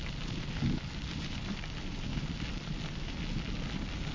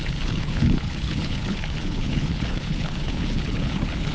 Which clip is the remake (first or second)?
second